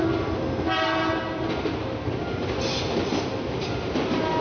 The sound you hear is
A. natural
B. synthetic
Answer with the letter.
A